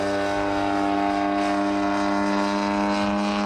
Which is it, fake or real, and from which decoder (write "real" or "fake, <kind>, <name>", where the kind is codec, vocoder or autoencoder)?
real